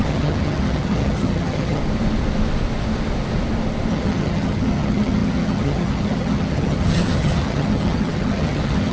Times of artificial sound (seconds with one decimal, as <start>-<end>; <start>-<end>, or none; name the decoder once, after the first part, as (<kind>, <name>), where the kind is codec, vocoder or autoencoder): 0.0-1.8 (vocoder, HiFi-GAN); 3.9-8.9